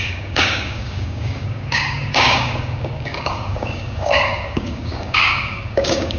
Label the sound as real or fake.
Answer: fake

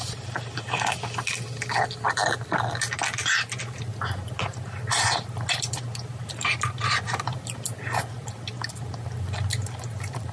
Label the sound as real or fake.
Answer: real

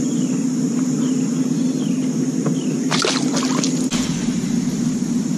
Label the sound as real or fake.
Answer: real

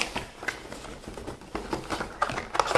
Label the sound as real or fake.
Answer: real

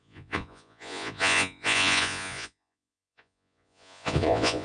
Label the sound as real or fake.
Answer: fake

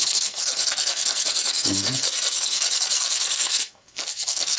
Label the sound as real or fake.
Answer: fake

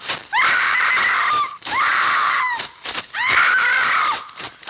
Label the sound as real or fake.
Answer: fake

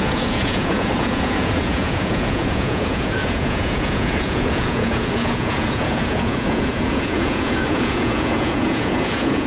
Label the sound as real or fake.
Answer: fake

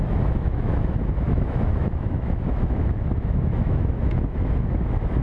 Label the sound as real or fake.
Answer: fake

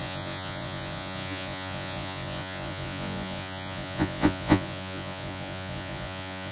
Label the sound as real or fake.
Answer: fake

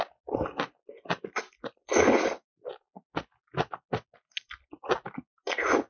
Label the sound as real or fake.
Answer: real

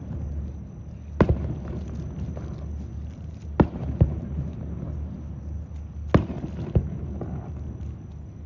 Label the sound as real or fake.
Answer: real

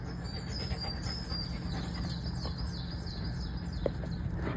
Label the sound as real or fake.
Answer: real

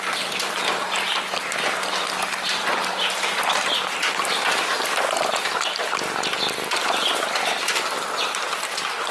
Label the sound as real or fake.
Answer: real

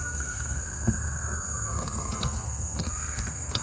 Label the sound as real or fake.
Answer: fake